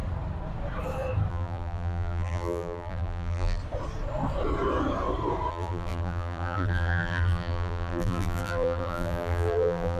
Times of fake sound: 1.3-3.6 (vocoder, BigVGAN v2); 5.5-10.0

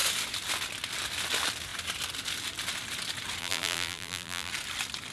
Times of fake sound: 3.4-4.5 (vocoder, BigVGAN v2)

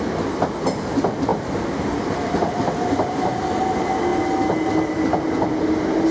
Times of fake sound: none